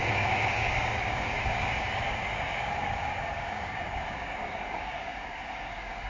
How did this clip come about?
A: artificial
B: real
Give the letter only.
A